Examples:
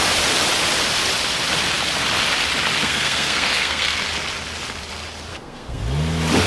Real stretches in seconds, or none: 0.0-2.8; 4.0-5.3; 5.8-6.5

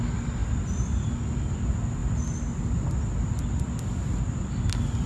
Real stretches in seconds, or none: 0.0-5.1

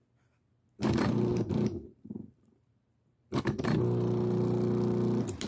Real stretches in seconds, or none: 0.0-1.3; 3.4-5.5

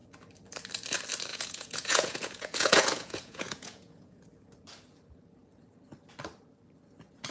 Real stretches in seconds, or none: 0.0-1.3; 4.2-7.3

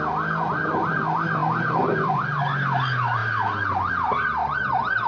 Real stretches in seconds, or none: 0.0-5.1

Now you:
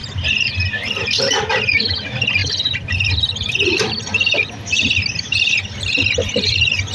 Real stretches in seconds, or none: none

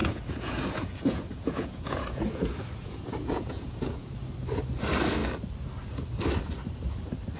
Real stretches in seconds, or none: 4.1-7.4